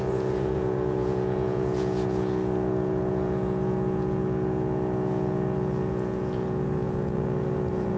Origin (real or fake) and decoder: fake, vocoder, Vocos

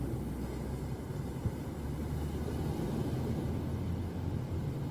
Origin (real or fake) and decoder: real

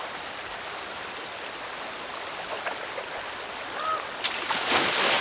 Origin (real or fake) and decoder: real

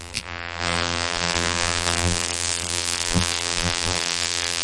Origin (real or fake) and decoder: fake, vocoder, BigVGAN v2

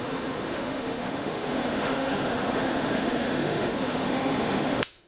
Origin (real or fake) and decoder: fake, autoencoder, DAC-VAE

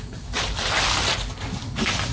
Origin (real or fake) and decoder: fake, vocoder, BigVGAN v2